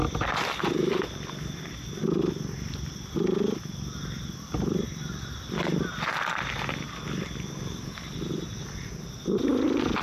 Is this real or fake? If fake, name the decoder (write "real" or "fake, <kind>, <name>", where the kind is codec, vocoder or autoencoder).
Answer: real